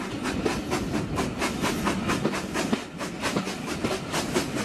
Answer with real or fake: real